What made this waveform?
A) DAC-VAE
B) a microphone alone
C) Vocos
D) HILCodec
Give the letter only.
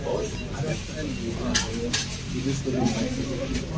B